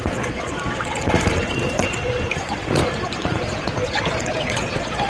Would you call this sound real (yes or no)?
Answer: no